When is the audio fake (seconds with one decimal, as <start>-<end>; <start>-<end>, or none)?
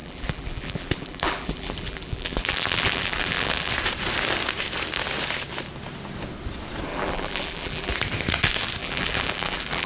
0.0-3.7; 6.9-7.9; 8.8-9.9